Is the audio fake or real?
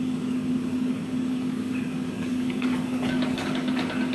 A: fake